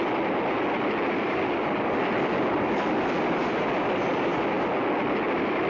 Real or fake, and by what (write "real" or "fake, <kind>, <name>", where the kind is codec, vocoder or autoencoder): real